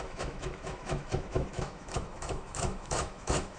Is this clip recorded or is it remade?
remade